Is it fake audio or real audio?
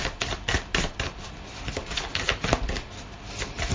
real